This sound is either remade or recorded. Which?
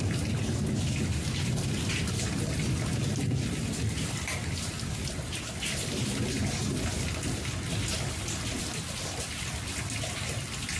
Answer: recorded